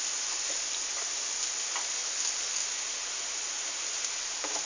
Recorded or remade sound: recorded